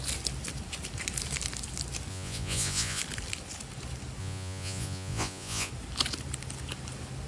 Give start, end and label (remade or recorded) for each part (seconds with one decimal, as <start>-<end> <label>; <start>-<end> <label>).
0.0-2.1 recorded; 2.1-3.0 remade; 3.0-4.2 recorded; 4.2-5.7 remade; 5.7-7.3 recorded